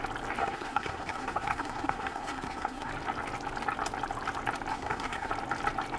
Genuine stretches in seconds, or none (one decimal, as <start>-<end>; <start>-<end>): 0.0-0.4; 2.9-4.7; 5.3-6.0